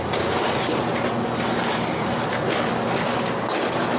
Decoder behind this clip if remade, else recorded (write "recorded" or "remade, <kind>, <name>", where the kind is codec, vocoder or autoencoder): recorded